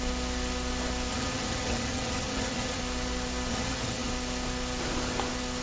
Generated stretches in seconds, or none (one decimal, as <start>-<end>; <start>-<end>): 1.1-2.8; 3.5-4.1